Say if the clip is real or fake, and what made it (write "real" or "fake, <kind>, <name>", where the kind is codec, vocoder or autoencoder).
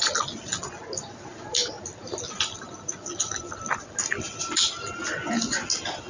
real